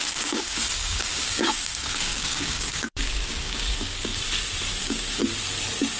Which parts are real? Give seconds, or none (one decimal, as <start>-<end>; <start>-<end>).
4.1-4.8; 5.2-6.0